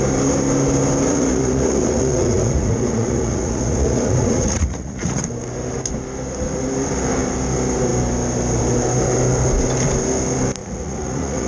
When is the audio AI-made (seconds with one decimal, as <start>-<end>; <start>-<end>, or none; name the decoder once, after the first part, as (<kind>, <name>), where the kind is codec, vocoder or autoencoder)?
1.1-5.2 (vocoder, Vocos); 10.6-11.5